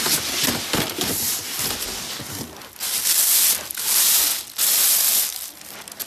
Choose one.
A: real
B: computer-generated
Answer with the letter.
A